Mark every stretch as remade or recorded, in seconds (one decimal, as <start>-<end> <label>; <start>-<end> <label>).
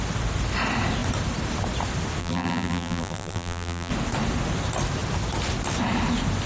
0.0-2.2 recorded; 2.2-3.9 remade; 3.9-6.5 recorded